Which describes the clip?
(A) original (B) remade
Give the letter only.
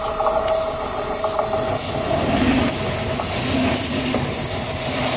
A